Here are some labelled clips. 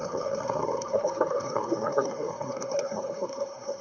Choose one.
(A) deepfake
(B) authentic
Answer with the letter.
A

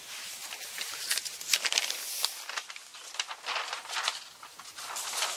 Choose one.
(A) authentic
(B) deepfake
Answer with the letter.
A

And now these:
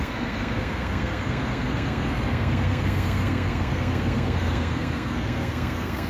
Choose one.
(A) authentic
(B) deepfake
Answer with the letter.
B